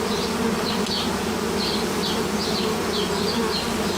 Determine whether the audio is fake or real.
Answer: real